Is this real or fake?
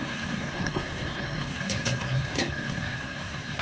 fake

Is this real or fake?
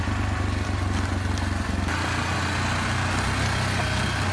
real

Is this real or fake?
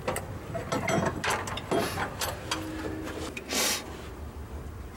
real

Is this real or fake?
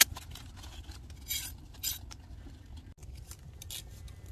real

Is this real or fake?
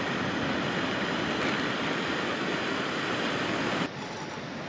real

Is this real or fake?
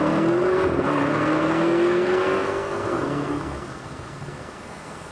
fake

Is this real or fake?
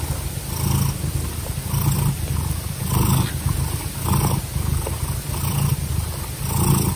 real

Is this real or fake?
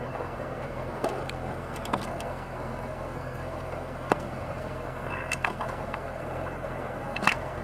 fake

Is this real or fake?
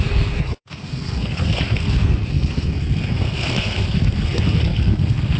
fake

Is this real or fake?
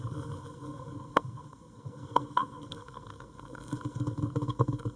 fake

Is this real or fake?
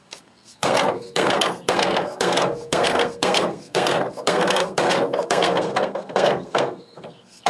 fake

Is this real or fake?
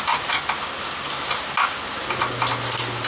real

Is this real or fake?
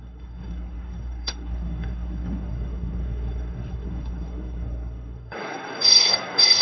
fake